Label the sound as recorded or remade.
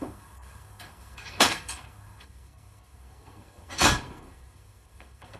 remade